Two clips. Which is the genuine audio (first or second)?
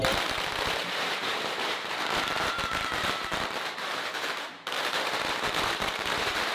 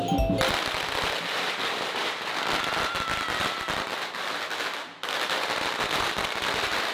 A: second